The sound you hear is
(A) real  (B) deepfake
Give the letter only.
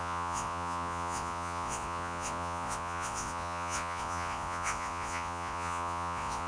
B